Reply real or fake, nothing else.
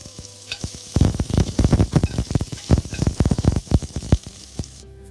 fake